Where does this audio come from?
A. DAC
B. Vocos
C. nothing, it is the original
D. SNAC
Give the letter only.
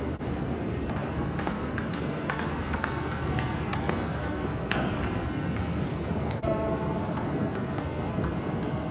D